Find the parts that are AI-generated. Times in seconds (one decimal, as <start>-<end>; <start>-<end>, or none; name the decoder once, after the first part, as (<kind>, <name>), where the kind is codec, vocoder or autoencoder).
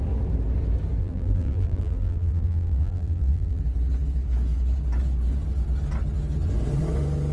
1.0-3.6 (vocoder, BigVGAN v2)